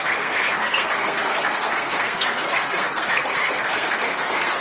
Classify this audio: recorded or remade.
remade